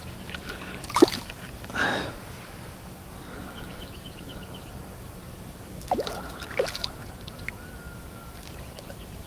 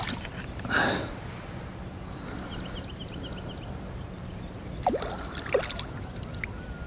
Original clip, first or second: second